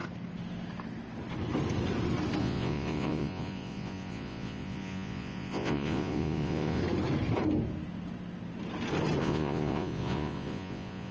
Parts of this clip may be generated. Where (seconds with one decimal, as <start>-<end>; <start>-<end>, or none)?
2.4-6.8; 9.2-11.1